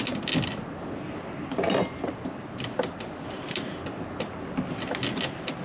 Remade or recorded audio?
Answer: recorded